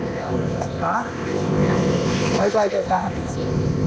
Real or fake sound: fake